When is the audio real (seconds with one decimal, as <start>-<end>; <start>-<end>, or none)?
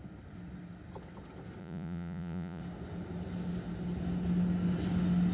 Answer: 0.0-1.6; 2.6-5.3